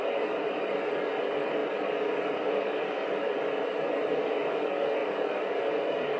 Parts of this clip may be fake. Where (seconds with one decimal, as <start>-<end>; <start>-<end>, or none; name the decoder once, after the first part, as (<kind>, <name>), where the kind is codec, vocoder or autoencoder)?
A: 0.0-6.2 (codec, DAC)